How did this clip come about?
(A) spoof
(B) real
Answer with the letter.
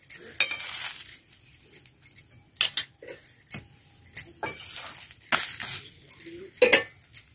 B